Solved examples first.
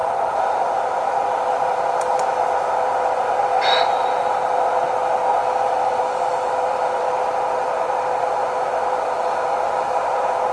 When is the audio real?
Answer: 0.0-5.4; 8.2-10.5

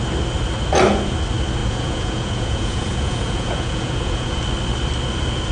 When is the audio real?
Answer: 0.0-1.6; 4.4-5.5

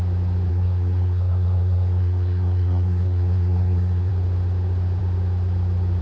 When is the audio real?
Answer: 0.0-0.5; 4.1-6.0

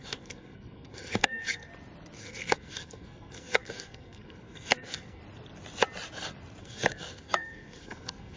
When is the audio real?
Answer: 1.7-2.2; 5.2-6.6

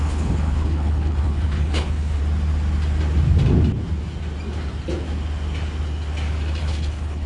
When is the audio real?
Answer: 2.2-6.6

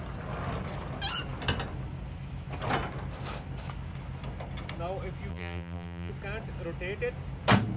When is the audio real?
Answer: 0.0-5.3; 6.1-7.8

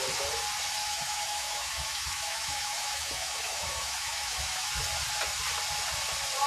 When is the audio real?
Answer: 0.0-0.8; 4.7-6.5

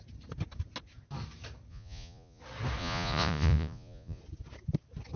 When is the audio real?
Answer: 0.0-1.7; 2.4-2.8; 4.2-5.2